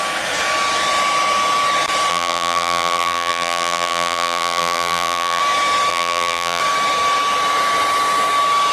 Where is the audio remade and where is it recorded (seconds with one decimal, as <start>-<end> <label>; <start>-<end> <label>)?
0.0-2.1 recorded; 2.1-5.4 remade; 5.4-5.9 recorded; 5.9-6.6 remade; 6.6-8.7 recorded